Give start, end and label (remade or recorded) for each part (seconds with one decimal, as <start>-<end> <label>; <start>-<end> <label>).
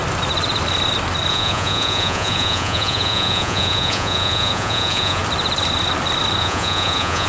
0.0-1.3 recorded; 1.3-5.2 remade; 5.2-6.4 recorded; 6.4-7.3 remade